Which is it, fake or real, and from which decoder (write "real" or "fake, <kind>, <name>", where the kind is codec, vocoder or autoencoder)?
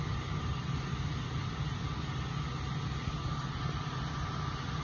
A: real